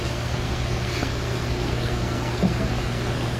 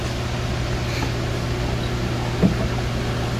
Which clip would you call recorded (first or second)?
second